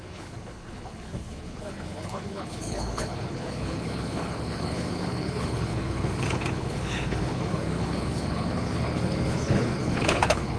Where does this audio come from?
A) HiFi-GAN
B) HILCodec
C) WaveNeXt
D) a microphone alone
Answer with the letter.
B